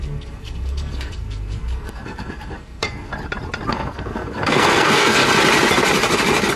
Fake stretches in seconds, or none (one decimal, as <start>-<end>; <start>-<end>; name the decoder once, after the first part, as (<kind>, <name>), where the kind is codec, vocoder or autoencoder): 0.0-3.1 (codec, SNAC); 3.7-5.2